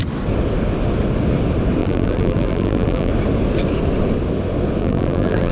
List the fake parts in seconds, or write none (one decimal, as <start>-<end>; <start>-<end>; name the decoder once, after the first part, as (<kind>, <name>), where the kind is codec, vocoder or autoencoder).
1.8-3.1 (vocoder, BigVGAN v2); 4.8-5.5